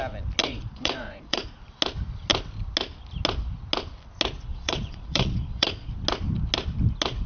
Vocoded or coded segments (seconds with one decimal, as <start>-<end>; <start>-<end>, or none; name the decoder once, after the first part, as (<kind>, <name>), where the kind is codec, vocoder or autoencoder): 0.4-1.5 (vocoder, Vocos); 4.5-5.9